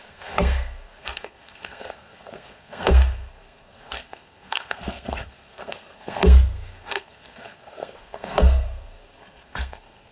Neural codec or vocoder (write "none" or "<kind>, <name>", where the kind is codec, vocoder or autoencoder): codec, SNAC